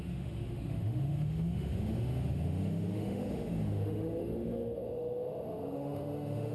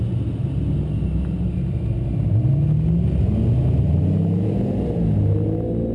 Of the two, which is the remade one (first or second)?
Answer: first